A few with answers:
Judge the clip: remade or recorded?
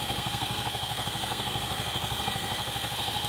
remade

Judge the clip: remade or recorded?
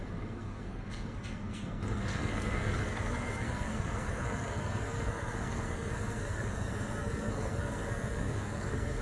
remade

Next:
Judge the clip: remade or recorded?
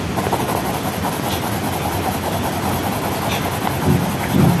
recorded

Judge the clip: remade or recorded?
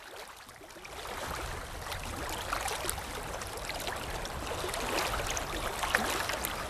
recorded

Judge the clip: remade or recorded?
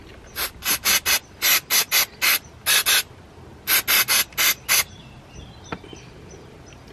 recorded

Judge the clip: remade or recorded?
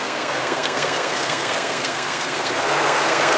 remade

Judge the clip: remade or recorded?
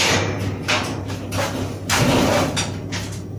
recorded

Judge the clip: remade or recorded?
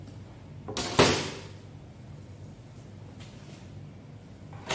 recorded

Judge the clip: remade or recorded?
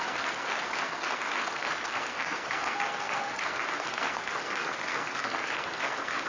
remade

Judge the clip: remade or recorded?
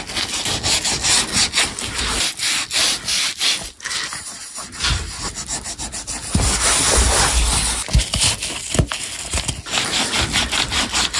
recorded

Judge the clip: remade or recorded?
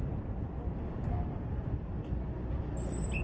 recorded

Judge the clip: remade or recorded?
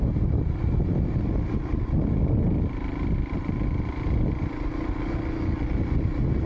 recorded